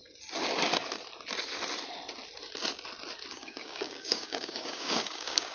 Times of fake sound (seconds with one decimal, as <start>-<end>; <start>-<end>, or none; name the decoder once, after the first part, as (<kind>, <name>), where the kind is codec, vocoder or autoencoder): 3.3-5.5 (codec, DAC)